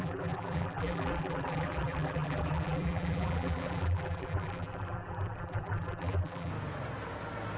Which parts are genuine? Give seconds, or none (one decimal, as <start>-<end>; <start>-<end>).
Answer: 6.5-7.6